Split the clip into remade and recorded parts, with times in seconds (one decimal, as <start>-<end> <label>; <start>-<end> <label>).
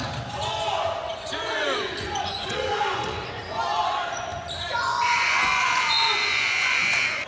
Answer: 0.0-7.3 remade